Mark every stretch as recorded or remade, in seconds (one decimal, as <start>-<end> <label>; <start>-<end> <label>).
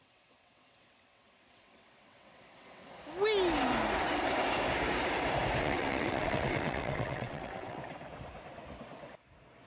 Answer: 0.0-2.8 remade; 2.8-5.6 recorded; 5.6-7.8 remade; 7.8-9.7 recorded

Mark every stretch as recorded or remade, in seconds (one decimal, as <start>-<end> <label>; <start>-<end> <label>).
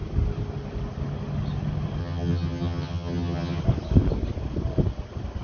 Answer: 0.0-2.0 recorded; 2.0-3.6 remade; 3.6-5.4 recorded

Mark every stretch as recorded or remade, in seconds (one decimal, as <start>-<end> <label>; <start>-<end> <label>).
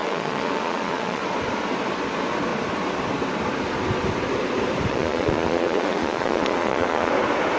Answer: 0.0-1.2 remade; 1.2-4.9 recorded; 4.9-7.1 remade; 7.1-7.6 recorded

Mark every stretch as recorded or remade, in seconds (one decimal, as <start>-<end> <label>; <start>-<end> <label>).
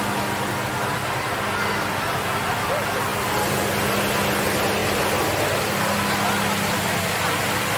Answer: 0.0-7.8 recorded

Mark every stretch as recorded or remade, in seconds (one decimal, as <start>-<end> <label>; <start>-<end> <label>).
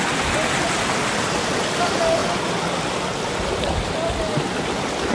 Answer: 0.0-5.1 recorded